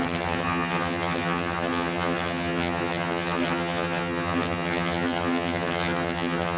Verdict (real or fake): fake